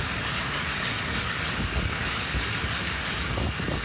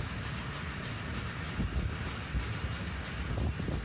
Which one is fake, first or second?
first